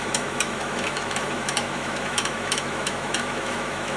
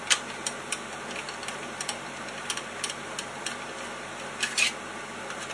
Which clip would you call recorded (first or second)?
second